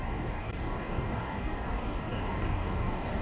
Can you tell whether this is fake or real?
fake